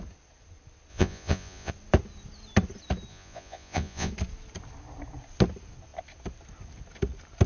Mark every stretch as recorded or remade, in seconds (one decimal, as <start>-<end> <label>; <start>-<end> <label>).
0.0-0.9 recorded; 0.9-1.7 remade; 1.7-3.1 recorded; 3.1-4.1 remade; 4.1-7.5 recorded